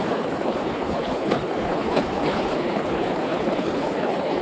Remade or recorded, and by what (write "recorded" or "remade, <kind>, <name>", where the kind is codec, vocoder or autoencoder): remade, codec, HILCodec